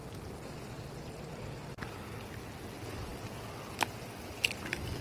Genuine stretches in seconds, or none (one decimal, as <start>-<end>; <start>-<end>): 0.0-5.0